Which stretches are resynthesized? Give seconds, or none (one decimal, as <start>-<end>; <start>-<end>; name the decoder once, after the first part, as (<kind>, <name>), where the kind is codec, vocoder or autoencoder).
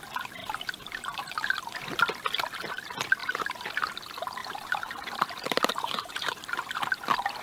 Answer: 0.4-1.6 (vocoder, BigVGAN v2); 3.2-3.9; 4.4-6.8